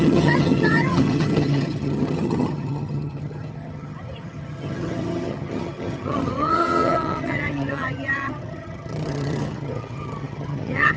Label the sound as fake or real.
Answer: fake